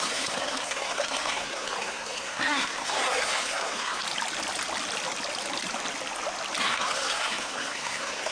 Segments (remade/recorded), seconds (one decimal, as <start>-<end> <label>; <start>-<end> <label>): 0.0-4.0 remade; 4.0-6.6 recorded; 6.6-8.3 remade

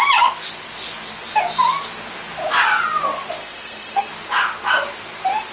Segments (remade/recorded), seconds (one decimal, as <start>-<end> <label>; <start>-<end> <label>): 0.0-3.4 recorded; 3.4-4.1 remade; 4.1-5.5 recorded

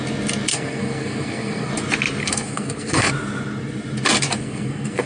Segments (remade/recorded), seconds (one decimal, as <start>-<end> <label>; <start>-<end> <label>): 0.0-0.5 recorded; 0.5-1.7 remade; 1.7-2.2 recorded; 2.2-3.1 remade; 3.1-4.3 recorded; 4.3-5.1 remade